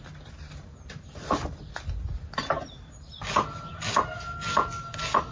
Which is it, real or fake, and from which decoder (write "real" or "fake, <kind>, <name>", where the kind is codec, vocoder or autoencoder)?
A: real